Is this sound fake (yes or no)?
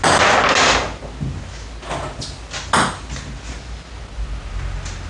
no